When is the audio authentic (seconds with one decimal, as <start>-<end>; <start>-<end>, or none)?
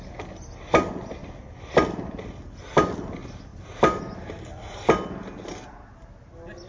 0.0-1.2; 2.6-3.5; 4.0-6.7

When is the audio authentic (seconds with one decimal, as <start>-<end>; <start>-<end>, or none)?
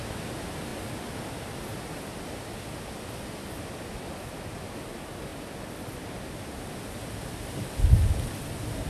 0.0-8.9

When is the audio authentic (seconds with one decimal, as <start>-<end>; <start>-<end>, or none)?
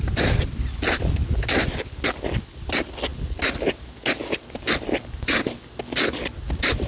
0.0-6.9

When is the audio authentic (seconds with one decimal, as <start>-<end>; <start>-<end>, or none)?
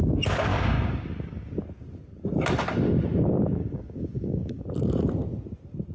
0.0-0.5; 1.6-3.6; 4.6-5.9